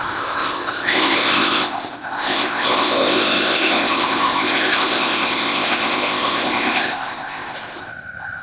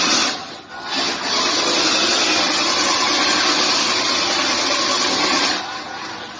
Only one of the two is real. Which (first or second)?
second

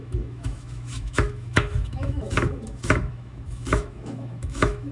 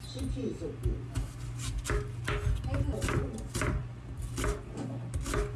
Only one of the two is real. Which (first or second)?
second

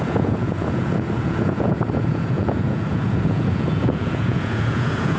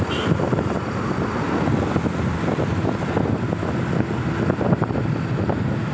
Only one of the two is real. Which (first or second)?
second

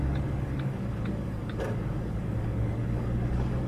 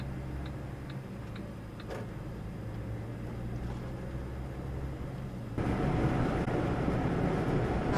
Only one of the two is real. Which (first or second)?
second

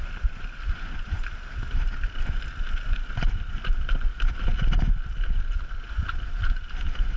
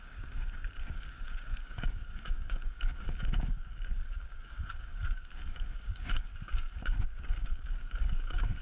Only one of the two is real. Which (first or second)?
first